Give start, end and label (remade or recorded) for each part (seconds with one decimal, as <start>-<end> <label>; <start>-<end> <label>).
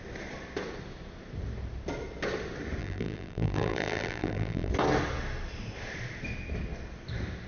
0.0-2.8 recorded; 2.8-4.7 remade; 4.7-7.5 recorded